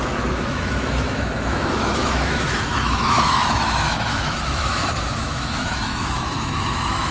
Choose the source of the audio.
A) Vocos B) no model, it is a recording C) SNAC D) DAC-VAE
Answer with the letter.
D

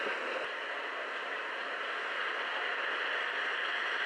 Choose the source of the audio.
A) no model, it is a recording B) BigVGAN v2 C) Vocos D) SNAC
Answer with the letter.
B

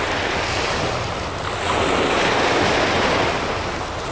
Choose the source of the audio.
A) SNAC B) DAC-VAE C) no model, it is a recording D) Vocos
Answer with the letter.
C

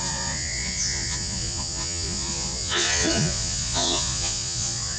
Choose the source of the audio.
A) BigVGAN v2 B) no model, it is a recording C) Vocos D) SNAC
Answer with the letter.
C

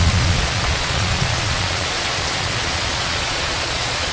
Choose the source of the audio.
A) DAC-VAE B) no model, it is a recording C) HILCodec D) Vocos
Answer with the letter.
D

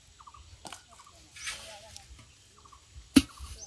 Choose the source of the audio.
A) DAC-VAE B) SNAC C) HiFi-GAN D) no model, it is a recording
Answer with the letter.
D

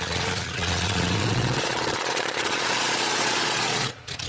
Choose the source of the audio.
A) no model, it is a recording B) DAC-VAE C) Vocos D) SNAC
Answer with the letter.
C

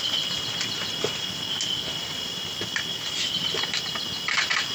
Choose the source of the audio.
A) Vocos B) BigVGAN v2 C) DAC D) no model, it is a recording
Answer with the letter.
D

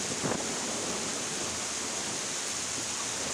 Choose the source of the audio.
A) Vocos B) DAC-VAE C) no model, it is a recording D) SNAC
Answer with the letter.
C